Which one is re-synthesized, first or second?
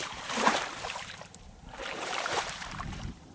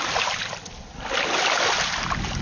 first